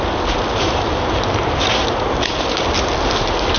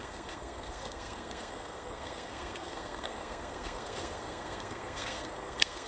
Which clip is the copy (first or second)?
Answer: second